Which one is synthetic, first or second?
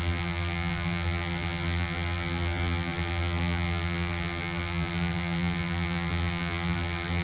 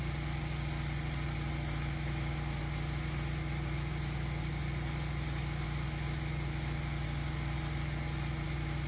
first